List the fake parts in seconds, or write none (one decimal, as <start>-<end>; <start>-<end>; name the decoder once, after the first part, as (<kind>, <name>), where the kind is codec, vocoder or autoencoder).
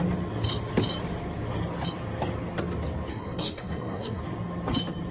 3.1-4.2 (codec, SNAC)